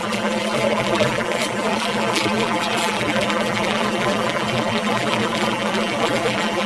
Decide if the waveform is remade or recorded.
remade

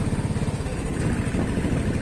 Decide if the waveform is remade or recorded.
recorded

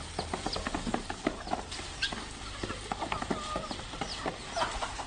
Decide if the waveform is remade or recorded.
recorded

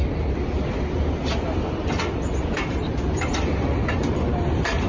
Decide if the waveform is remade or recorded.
recorded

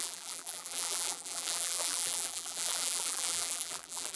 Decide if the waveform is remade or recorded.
remade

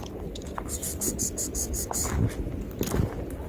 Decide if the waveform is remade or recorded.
recorded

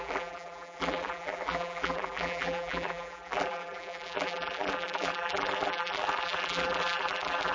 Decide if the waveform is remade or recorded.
remade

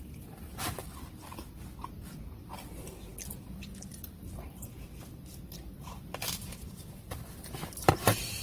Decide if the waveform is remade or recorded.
recorded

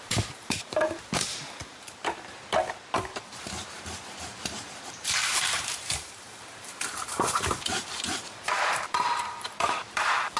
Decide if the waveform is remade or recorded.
remade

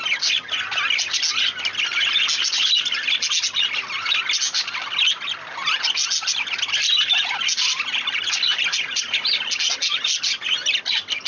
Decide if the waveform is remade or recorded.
recorded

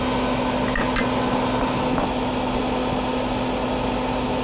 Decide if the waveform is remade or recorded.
recorded